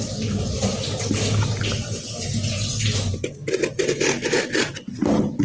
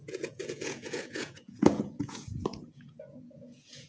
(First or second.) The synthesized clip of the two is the second